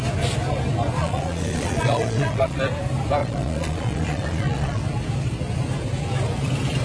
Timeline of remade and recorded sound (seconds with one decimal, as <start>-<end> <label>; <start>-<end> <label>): 0.0-1.0 recorded; 1.0-2.6 remade; 2.6-3.2 recorded; 3.2-4.8 remade; 4.8-6.8 recorded